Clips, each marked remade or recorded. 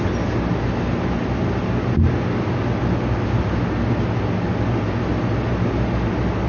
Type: recorded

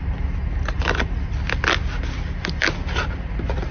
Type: recorded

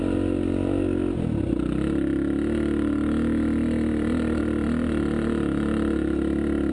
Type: recorded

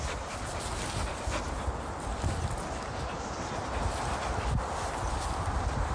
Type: recorded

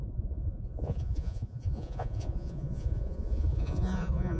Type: remade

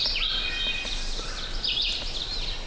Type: recorded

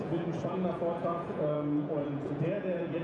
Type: remade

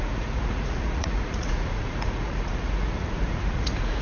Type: remade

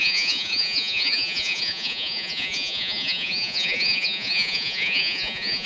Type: remade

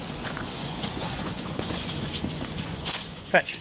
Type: remade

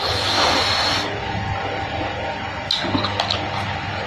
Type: recorded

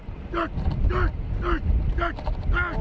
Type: recorded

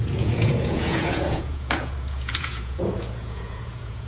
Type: remade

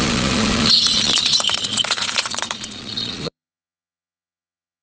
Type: remade